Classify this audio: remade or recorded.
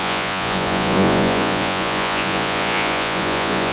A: remade